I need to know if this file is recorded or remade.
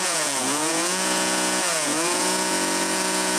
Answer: remade